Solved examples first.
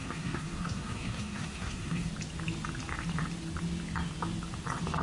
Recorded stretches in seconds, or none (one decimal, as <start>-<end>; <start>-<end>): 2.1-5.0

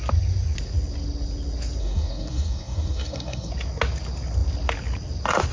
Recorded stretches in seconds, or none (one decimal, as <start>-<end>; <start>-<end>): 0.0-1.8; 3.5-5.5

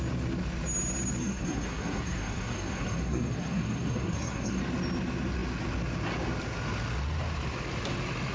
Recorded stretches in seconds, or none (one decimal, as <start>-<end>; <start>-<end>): 0.0-1.2; 4.6-8.3

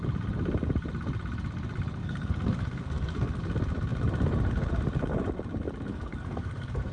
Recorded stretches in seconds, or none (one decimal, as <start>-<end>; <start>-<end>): 0.0-2.0; 3.4-5.9

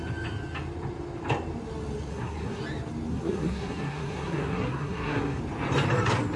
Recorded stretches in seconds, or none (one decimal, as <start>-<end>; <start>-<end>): 0.0-2.1; 2.6-3.1; 5.4-6.4